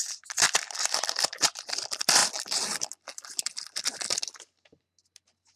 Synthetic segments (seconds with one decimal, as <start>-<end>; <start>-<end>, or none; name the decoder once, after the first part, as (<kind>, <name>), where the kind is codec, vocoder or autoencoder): none